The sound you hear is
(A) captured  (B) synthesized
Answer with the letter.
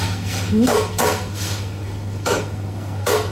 B